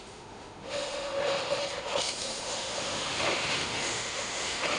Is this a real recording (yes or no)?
no